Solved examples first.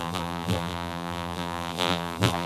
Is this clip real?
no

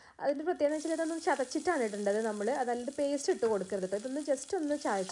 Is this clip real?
yes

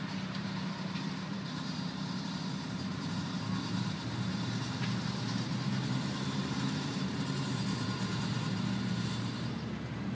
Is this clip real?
no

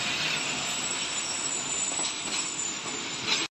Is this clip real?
yes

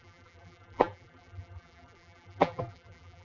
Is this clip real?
no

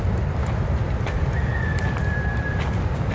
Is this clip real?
no